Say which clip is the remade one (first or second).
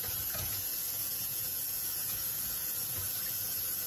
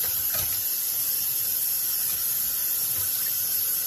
first